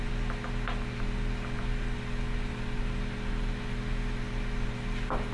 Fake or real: real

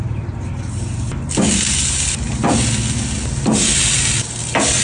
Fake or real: real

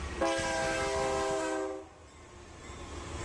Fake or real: real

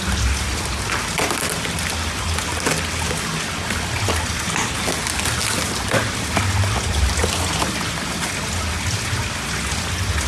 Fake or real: real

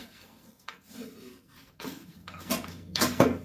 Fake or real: fake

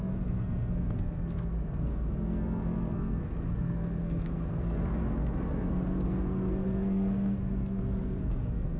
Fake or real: fake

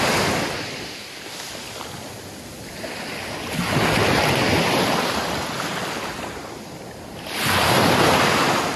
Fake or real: real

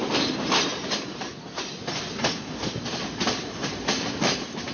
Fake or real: real